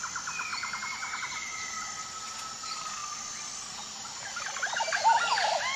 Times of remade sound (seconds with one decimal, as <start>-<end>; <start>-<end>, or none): 0.5-1.9